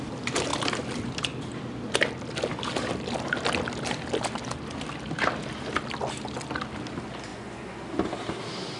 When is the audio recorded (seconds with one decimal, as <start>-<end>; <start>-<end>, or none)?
0.0-7.3; 7.8-8.8